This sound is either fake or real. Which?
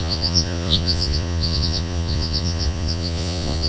fake